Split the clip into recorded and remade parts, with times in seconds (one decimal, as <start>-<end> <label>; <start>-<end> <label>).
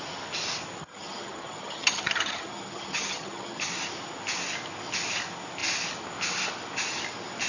0.0-0.8 recorded; 0.8-3.7 remade; 3.7-7.5 recorded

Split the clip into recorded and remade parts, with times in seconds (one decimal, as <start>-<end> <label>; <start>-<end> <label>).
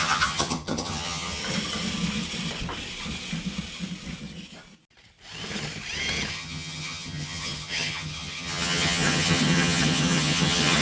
0.0-1.4 remade; 1.4-6.3 recorded; 6.3-10.8 remade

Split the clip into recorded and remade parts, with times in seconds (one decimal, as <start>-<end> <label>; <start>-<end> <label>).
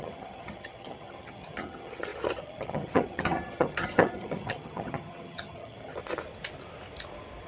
0.0-6.0 remade; 6.0-7.5 recorded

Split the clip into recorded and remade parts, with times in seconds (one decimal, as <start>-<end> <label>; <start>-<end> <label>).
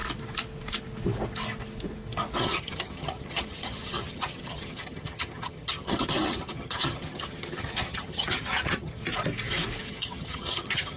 0.0-2.4 recorded; 2.4-9.0 remade; 9.0-9.8 recorded; 9.8-11.0 remade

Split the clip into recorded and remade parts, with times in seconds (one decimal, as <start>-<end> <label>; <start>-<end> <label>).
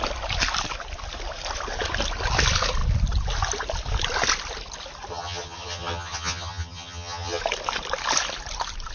0.0-5.1 recorded; 5.1-7.4 remade; 7.4-8.9 recorded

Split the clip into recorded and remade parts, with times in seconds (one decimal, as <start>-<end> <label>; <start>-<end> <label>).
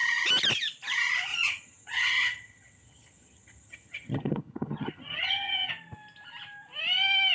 0.0-1.3 recorded; 1.3-5.7 remade; 5.7-7.3 recorded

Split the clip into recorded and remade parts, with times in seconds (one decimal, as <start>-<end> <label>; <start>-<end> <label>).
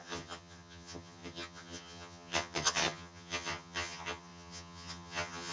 0.0-5.5 remade